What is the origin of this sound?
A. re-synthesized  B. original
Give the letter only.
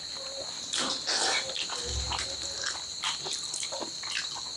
B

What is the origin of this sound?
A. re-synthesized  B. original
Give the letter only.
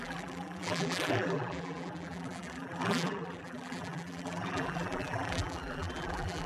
A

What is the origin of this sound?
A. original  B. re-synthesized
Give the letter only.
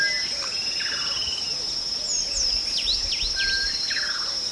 A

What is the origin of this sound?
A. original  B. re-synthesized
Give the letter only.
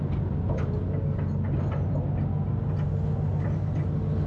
A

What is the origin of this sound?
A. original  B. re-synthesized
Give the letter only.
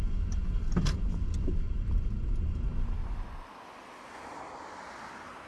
A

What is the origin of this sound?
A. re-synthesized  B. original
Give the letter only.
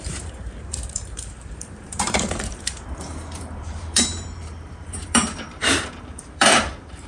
A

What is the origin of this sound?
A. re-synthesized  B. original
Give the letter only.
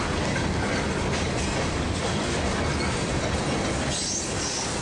B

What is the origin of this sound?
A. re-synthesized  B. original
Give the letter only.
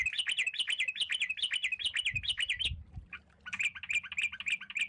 B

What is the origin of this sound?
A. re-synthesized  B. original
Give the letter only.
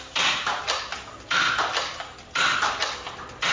B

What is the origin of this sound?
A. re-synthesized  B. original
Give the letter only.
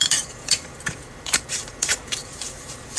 A